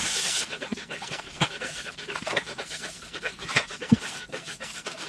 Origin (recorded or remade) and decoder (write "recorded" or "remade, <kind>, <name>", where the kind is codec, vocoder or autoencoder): remade, codec, SNAC